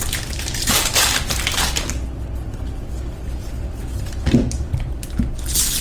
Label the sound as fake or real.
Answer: fake